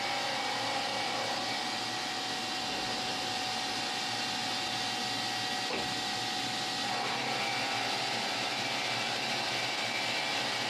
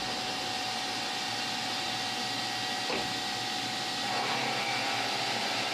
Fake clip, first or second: second